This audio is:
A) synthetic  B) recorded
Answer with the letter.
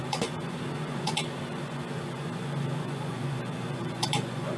A